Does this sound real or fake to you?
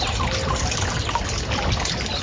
real